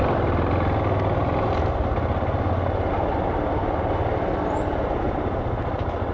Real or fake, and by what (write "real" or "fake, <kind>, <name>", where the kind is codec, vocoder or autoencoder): real